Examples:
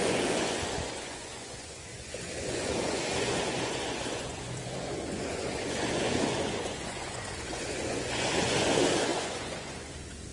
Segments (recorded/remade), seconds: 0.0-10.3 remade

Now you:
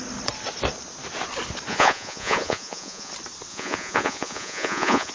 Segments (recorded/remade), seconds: 0.0-1.7 recorded; 1.7-3.1 remade; 3.1-3.5 recorded; 3.5-5.1 remade

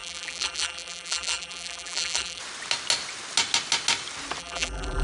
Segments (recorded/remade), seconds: 0.0-2.4 remade; 2.4-4.4 recorded; 4.4-5.0 remade

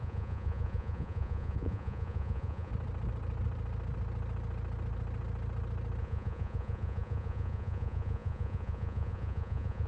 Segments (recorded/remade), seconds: 0.0-2.7 remade; 2.7-6.0 recorded; 6.0-9.9 remade

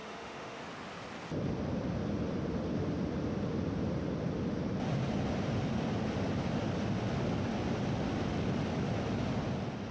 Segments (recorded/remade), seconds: 0.0-0.6 remade; 0.6-9.9 recorded

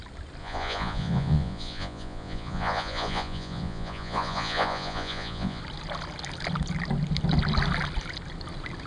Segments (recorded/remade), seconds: 0.0-0.4 recorded; 0.4-5.6 remade; 5.6-8.9 recorded

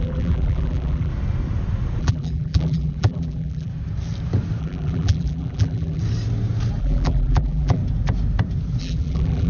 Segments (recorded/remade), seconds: 0.0-1.1 remade; 1.1-2.0 recorded; 2.0-3.7 remade; 3.7-4.6 recorded; 4.6-6.0 remade; 6.0-6.8 recorded; 6.8-7.8 remade; 7.8-8.8 recorded; 8.8-9.5 remade